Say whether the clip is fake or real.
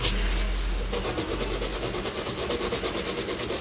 real